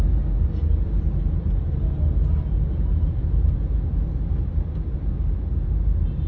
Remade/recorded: recorded